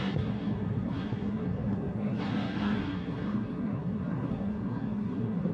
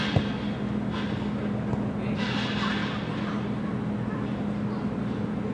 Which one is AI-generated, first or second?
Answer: first